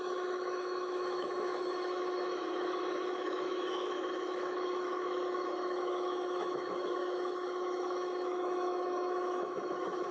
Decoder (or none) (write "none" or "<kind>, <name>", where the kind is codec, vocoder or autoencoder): autoencoder, DAC-VAE